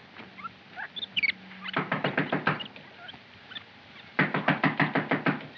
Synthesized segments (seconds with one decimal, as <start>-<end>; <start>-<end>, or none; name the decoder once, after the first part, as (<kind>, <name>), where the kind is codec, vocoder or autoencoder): none

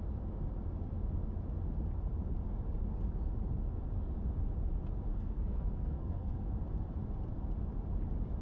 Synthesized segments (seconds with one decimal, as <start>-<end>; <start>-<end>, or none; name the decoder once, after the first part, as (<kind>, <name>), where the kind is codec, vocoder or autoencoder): 5.1-6.5 (codec, SNAC)